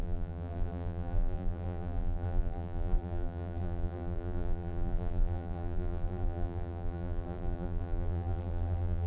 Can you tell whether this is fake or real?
fake